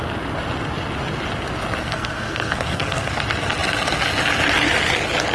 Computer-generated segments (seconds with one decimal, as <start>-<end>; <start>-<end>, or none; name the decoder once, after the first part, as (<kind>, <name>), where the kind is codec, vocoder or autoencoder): 1.8-3.2 (codec, SNAC)